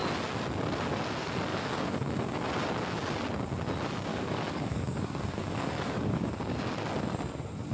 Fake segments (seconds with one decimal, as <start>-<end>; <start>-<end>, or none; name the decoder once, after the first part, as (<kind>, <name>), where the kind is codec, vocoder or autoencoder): 1.5-2.5 (codec, DAC); 4.1-6.3